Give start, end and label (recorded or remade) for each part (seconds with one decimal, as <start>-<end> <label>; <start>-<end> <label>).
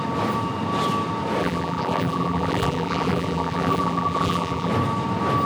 0.0-1.4 recorded; 1.4-4.7 remade; 4.7-5.5 recorded